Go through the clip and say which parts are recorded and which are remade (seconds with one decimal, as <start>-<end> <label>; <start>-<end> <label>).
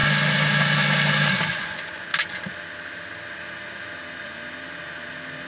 0.0-1.5 recorded; 1.5-2.1 remade; 2.1-5.5 recorded